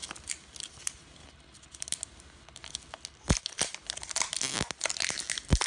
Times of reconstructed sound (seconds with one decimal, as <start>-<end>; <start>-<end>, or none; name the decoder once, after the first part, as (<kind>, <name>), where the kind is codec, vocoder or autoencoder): none